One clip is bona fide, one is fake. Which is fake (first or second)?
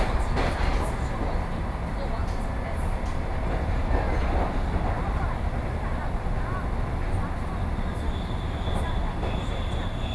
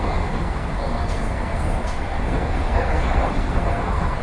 second